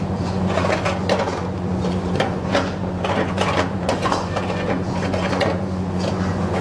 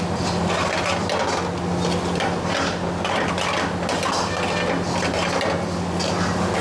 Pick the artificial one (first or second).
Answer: first